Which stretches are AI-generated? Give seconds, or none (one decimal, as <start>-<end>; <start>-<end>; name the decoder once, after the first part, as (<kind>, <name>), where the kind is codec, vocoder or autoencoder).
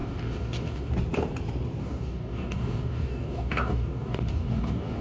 0.0-0.9 (codec, DAC); 1.8-5.0